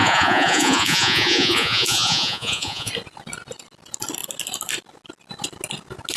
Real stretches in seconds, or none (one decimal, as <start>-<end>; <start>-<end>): 2.9-6.2